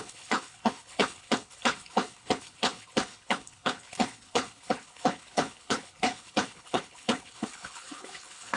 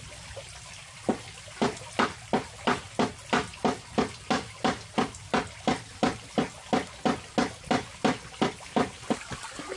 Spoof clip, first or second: first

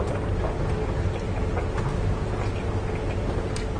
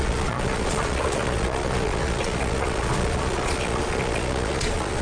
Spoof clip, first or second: second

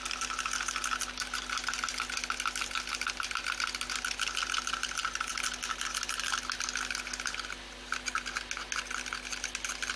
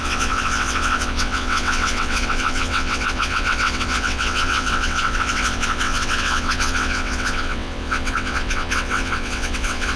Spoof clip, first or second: second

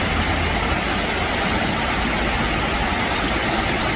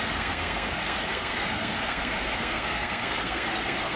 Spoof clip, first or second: second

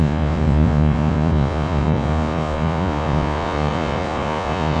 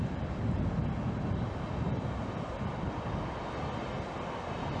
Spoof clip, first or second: first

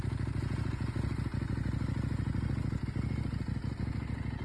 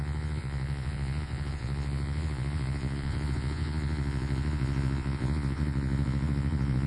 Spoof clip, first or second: second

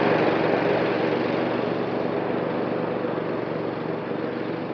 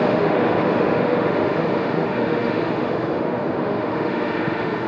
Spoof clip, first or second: second